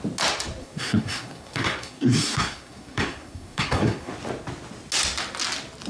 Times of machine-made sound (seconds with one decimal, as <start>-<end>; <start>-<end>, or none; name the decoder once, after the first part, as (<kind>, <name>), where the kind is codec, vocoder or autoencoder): 0.6-4.1 (codec, SNAC)